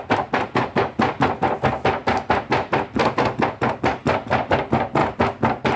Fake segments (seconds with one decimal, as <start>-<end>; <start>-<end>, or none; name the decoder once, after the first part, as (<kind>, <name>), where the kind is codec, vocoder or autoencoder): none